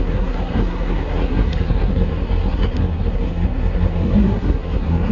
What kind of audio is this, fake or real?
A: fake